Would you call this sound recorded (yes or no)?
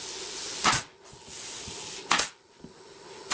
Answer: yes